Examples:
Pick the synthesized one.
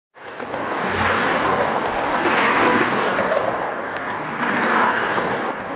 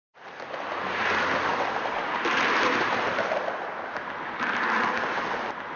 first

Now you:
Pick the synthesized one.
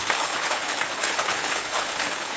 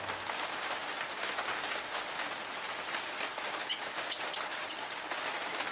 first